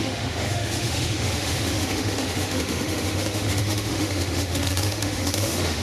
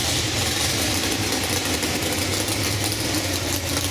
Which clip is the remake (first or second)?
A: first